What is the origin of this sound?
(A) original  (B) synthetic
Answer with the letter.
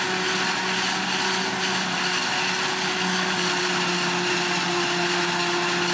A